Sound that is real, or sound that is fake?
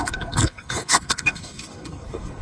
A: fake